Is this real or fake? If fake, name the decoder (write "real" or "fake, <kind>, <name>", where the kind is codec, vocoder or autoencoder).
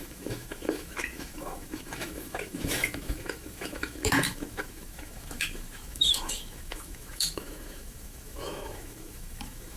fake, autoencoder, DAC-VAE